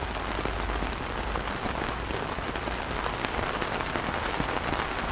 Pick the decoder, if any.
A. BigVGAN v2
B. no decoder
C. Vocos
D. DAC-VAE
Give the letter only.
B